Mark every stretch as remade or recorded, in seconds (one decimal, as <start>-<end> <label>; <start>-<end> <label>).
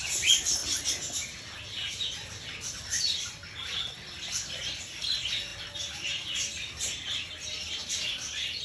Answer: 0.0-8.6 recorded